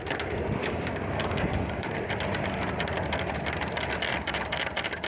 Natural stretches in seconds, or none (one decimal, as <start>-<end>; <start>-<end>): 0.0-0.6; 1.9-5.1